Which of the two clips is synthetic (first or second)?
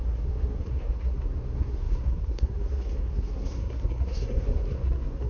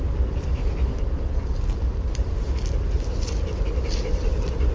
first